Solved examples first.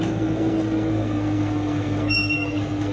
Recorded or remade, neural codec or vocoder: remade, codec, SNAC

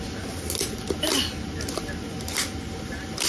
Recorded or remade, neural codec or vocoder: recorded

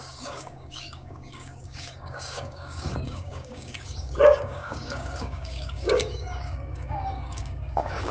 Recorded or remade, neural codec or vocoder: remade, codec, DAC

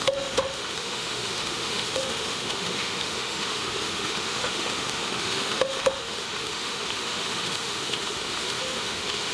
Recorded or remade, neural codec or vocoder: remade, autoencoder, DAC-VAE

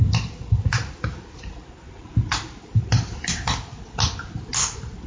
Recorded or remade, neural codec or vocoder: recorded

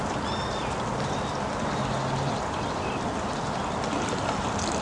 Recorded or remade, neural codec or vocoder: recorded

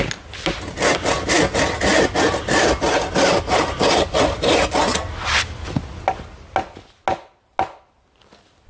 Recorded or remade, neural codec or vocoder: recorded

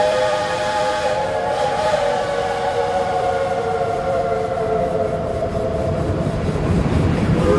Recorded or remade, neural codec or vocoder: remade, vocoder, BigVGAN v2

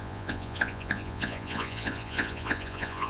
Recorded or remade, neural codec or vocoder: remade, vocoder, Vocos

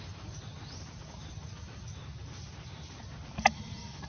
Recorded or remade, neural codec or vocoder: recorded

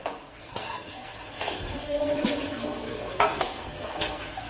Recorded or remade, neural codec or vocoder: remade, codec, SNAC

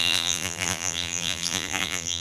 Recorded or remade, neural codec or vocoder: remade, vocoder, BigVGAN v2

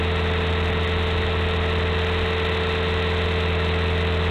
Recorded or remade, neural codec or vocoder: recorded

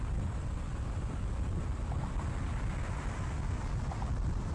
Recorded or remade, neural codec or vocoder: recorded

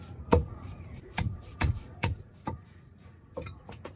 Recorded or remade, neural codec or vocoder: remade, vocoder, Vocos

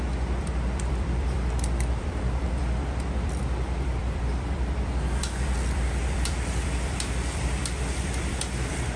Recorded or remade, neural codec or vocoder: remade, vocoder, BigVGAN v2